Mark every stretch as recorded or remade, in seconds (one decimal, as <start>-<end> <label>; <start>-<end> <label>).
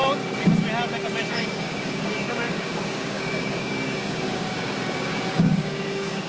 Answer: 0.0-1.3 recorded; 1.3-6.3 remade